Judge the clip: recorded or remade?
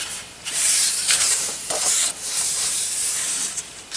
remade